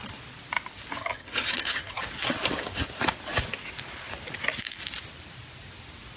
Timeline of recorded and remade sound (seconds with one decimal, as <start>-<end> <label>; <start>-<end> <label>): 0.0-1.0 recorded; 1.0-2.0 remade; 2.0-6.2 recorded